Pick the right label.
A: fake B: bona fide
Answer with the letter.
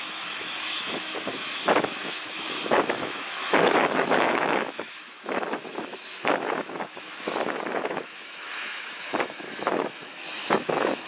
A